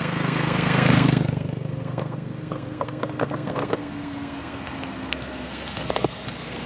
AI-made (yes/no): yes